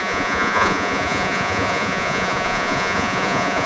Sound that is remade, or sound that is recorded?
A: remade